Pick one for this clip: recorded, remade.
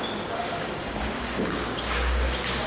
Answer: remade